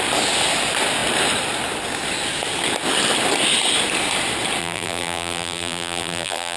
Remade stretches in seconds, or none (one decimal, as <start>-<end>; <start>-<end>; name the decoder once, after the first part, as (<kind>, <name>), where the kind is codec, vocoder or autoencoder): 4.6-6.6 (vocoder, BigVGAN v2)